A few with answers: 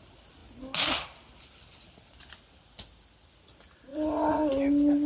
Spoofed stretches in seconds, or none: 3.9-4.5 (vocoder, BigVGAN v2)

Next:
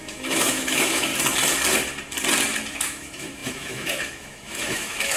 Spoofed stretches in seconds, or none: 0.0-1.1 (autoencoder, DAC-VAE); 2.7-5.2

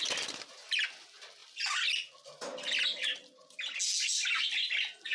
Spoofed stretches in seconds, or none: none

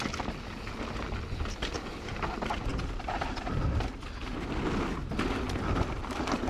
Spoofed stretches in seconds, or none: 2.7-3.8 (vocoder, BigVGAN v2)

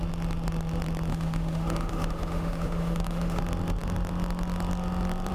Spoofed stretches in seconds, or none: 1.1-3.4 (autoencoder, DAC-VAE)

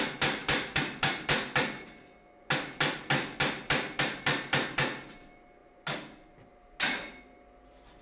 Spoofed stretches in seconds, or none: none

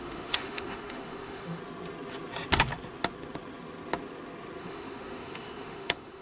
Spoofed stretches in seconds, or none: 0.0-1.6 (autoencoder, DAC-VAE); 4.6-6.2

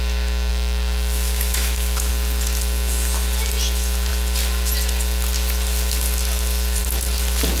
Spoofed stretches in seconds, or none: 0.5-2.1 (autoencoder, DAC-VAE)